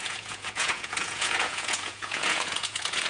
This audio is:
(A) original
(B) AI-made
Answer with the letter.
B